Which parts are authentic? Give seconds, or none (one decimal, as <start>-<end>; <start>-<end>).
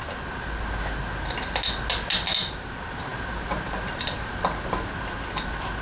0.0-5.8